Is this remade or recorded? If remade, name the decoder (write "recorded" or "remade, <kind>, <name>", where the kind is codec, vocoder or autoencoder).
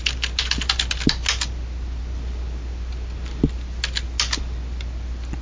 recorded